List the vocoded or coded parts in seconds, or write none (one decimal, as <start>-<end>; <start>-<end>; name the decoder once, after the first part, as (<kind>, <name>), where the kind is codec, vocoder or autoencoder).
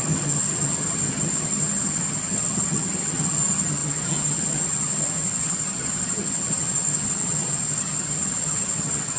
0.0-9.2 (vocoder, HiFi-GAN)